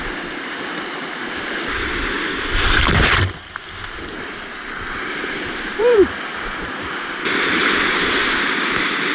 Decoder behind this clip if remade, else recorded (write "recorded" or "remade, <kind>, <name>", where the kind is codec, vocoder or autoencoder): remade, vocoder, BigVGAN v2